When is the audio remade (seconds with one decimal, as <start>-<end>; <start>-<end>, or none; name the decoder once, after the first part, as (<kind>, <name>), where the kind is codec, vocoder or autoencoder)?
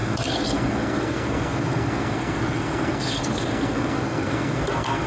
0.0-5.1 (codec, SNAC)